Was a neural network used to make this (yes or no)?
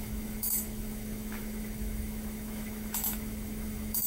yes